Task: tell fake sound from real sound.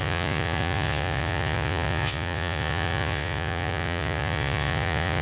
fake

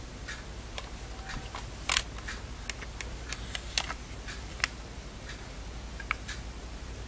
real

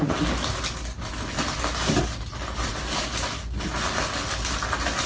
real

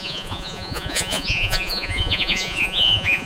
fake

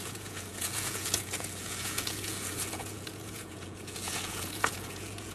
fake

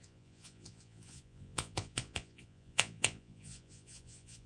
fake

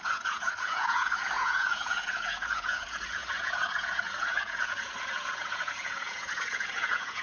fake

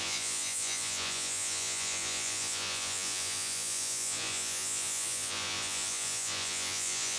fake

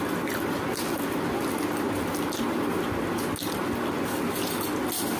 real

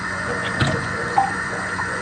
fake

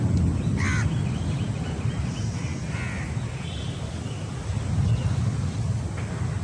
real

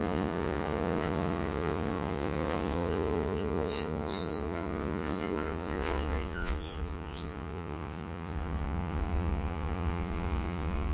fake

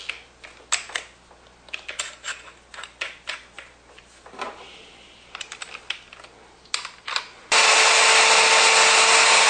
real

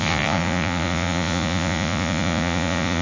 fake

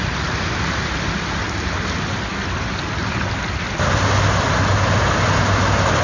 real